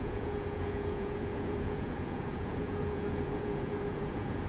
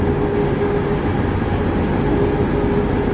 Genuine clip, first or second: second